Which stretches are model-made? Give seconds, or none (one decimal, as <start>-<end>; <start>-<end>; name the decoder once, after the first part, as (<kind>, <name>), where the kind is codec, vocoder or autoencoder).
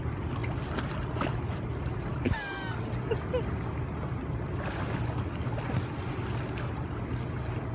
none